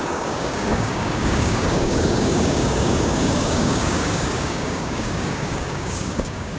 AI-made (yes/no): yes